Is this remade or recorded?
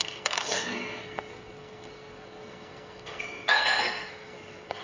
remade